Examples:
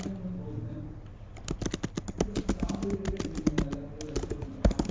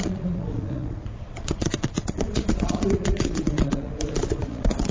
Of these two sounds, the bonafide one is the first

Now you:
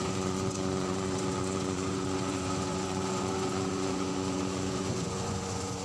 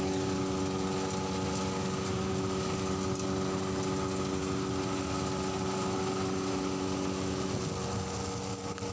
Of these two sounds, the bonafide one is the second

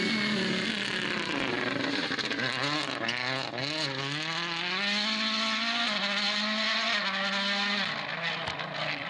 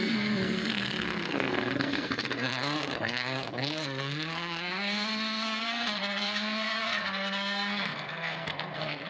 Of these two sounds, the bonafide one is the first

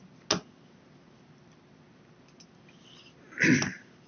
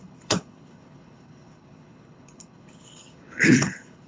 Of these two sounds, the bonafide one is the first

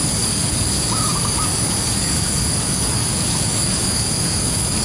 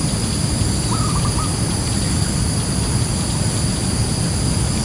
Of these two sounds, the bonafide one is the second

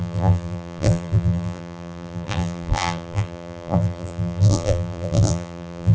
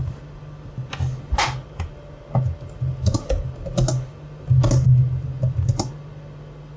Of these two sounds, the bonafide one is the second